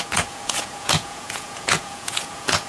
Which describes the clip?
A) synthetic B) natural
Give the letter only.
A